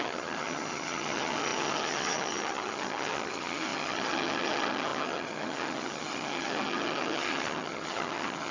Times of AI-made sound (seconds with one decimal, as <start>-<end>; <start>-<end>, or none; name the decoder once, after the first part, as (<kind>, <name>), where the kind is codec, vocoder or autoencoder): 0.0-8.5 (vocoder, HiFi-GAN)